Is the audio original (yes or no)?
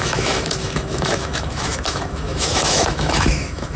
no